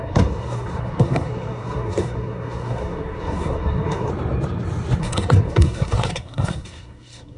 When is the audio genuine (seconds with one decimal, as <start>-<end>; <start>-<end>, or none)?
4.1-5.0